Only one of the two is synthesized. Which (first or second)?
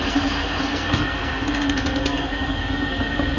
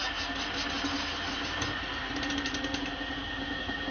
first